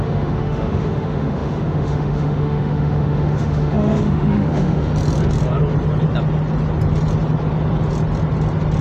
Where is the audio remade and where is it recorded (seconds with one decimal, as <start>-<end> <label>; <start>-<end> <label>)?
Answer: 0.0-4.9 remade; 4.9-8.8 recorded